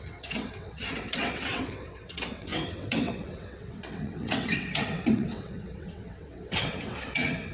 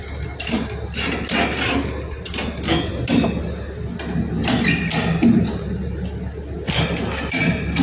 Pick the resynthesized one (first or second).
first